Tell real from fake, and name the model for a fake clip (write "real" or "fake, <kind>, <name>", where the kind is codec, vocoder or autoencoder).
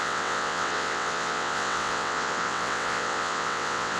fake, vocoder, WaveNeXt